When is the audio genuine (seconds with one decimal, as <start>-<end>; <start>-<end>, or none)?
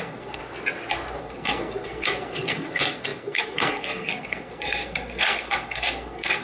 0.4-1.2